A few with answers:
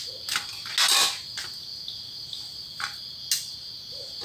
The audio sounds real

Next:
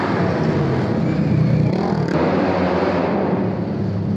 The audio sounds real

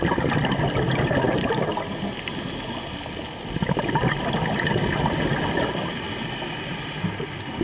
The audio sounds real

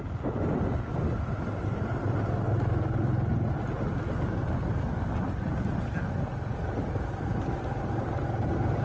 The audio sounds real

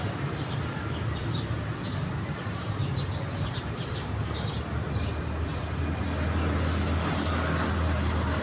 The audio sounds real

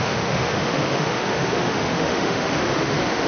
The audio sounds fake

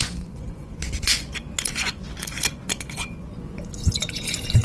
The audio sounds fake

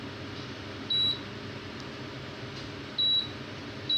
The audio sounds real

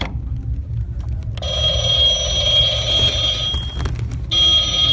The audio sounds real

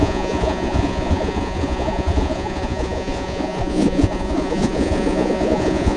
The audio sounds fake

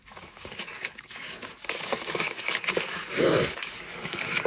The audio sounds fake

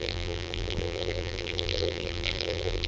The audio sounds fake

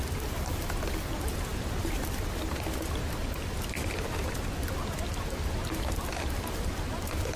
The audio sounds real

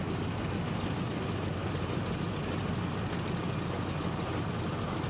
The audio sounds real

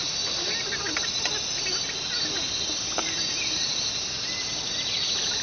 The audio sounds real